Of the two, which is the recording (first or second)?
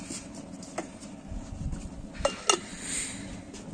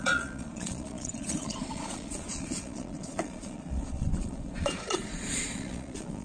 first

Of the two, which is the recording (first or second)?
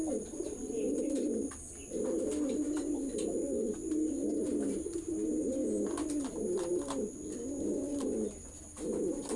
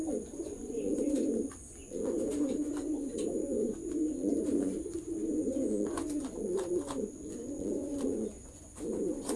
first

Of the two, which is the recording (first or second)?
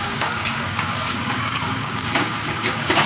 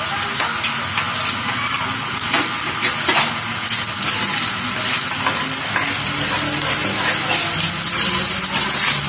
second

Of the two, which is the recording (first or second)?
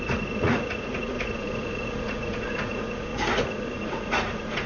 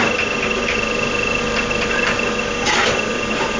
second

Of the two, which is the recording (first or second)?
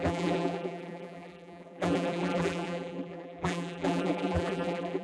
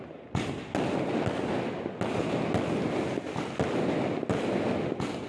second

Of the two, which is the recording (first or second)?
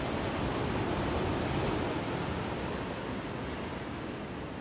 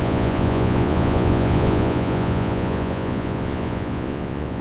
first